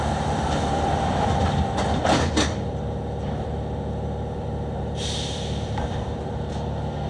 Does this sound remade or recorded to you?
remade